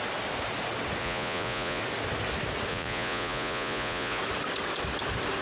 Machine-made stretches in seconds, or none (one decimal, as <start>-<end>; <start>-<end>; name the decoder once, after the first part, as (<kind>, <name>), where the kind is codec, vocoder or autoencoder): 1.0-1.8 (vocoder, Vocos); 2.7-4.2